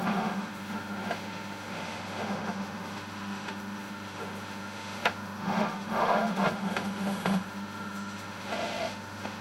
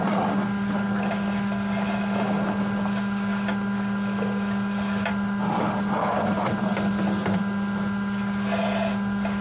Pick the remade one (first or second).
first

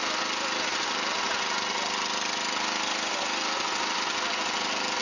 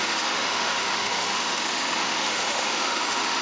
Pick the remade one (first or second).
second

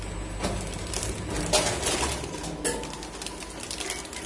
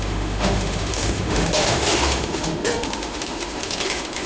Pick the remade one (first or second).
second